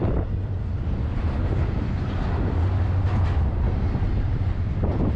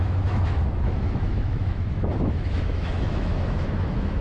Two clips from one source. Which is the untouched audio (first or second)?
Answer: first